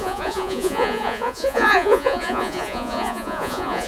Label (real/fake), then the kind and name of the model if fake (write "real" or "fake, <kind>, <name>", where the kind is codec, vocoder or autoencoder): fake, vocoder, Vocos